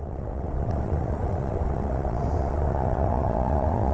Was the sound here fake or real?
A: fake